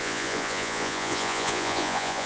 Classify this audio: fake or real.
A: fake